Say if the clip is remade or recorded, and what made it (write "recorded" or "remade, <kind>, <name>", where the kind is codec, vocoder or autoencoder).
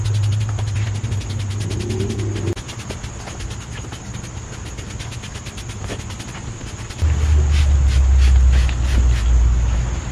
recorded